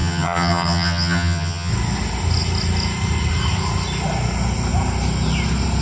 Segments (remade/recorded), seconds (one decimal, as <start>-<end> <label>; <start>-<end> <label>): 0.0-1.7 remade; 1.7-5.8 recorded